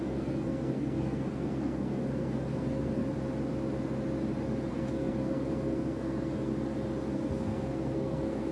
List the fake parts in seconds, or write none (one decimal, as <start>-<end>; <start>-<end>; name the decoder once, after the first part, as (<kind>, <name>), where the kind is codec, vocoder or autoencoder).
0.0-3.0 (codec, SNAC); 4.7-6.5; 7.1-8.5